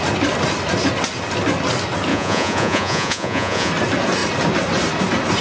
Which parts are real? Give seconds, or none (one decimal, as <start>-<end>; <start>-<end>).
0.0-2.1; 3.7-5.4